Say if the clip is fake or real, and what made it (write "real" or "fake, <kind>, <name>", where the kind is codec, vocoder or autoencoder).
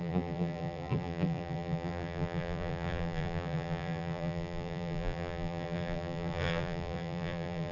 fake, vocoder, BigVGAN v2